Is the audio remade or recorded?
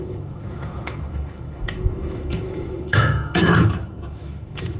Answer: remade